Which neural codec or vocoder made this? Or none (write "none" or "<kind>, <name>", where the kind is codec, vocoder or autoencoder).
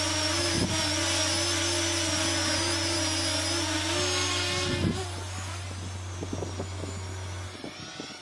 none